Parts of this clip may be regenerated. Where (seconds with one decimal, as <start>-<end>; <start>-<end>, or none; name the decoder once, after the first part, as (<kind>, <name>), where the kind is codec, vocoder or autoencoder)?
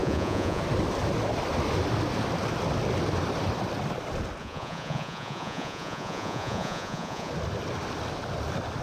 0.0-0.6 (vocoder, Vocos); 4.4-7.3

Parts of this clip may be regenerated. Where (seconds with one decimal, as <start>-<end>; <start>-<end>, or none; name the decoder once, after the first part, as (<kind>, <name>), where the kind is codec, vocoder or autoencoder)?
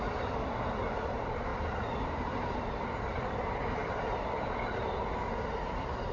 none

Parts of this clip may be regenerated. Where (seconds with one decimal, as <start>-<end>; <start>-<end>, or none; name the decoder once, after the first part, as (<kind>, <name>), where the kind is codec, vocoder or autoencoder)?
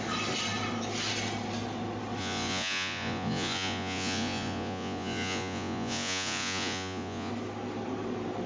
2.2-7.3 (vocoder, Vocos)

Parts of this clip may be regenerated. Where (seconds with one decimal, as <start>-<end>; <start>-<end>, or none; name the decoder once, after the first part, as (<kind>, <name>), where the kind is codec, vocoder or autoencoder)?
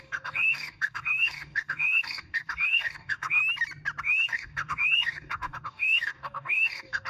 0.0-3.4 (codec, DAC); 4.0-7.1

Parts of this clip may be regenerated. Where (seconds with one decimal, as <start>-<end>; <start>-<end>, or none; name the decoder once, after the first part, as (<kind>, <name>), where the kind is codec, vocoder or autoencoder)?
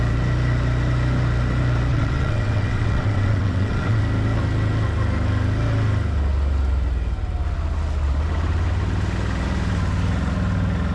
1.9-4.0 (vocoder, WaveNeXt)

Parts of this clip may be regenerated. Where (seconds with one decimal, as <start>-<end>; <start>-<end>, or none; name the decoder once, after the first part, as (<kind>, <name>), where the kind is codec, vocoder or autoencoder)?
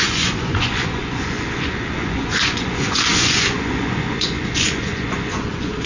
0.0-5.9 (vocoder, Vocos)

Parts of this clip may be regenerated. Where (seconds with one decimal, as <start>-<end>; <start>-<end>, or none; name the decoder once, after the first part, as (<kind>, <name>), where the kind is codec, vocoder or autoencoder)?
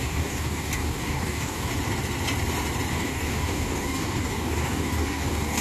0.0-1.7 (codec, DAC); 2.9-5.6